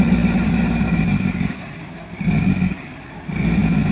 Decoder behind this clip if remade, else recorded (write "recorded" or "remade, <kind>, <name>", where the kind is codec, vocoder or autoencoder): remade, vocoder, BigVGAN v2